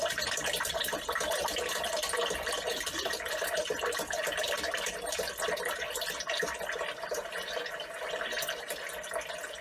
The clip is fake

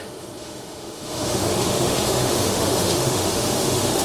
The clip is fake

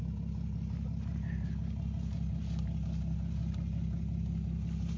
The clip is real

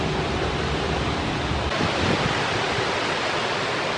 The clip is real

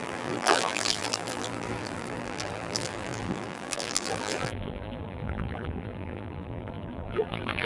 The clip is fake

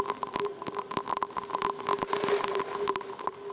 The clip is fake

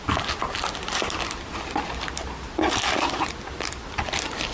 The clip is real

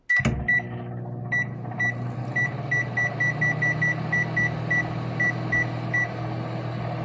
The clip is real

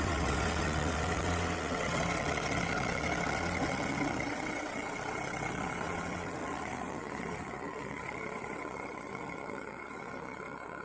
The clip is fake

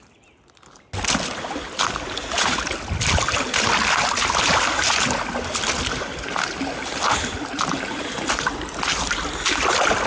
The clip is real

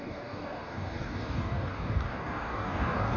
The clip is fake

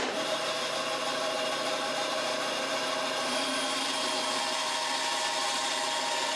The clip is real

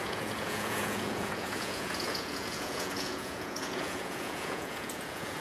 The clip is fake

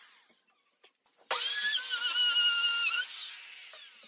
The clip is real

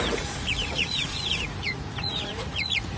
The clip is fake